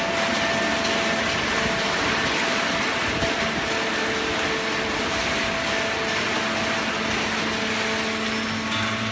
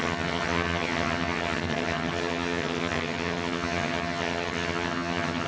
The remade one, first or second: second